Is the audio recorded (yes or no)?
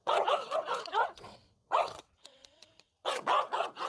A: no